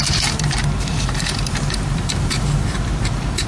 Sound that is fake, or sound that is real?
fake